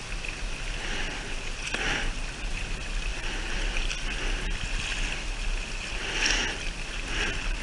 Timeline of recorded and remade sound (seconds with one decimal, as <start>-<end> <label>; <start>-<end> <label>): 0.0-7.6 recorded